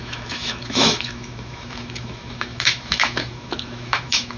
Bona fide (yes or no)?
no